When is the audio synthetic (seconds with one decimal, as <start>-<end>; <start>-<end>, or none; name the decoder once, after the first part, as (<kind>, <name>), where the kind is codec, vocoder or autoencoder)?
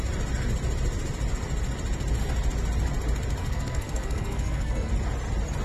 3.4-4.9 (codec, SNAC)